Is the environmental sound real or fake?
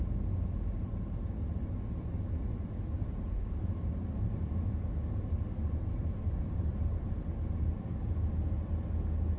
real